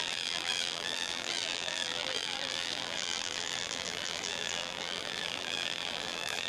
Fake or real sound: fake